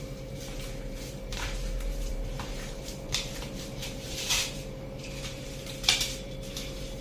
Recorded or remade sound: remade